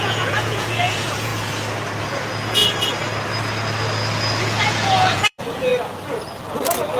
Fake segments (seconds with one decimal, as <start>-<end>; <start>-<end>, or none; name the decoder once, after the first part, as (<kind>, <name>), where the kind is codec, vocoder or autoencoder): 0.0-1.3 (vocoder, Vocos); 2.0-2.6; 4.4-5.7